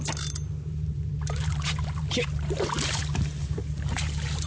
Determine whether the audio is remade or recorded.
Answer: remade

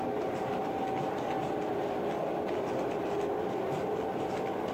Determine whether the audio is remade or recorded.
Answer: recorded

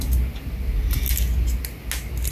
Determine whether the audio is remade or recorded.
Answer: recorded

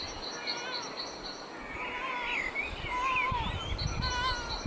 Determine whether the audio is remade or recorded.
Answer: recorded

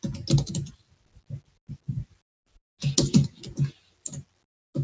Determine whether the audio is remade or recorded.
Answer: recorded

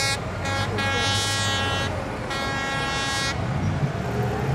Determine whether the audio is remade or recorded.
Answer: recorded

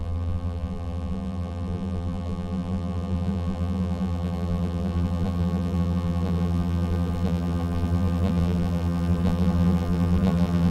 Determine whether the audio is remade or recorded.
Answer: remade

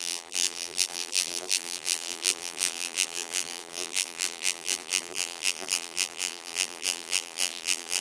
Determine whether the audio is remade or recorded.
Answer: remade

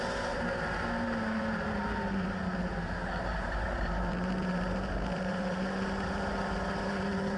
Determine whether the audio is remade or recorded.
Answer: remade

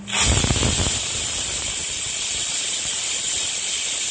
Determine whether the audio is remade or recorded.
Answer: remade